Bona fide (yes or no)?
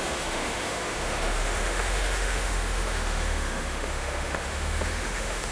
no